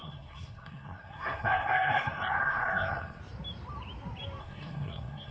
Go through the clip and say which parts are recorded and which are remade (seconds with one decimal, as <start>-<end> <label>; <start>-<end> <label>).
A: 0.0-3.2 remade; 3.2-4.4 recorded; 4.4-5.3 remade